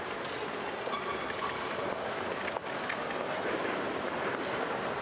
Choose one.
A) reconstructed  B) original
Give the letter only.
B